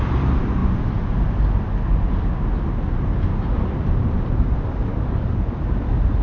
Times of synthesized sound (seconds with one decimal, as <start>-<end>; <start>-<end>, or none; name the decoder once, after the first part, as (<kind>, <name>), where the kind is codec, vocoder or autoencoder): 4.9-5.5 (codec, DAC)